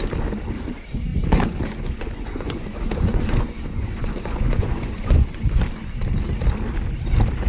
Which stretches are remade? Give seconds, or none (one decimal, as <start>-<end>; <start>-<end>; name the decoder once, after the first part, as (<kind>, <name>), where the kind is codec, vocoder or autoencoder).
1.1-5.6 (vocoder, Vocos)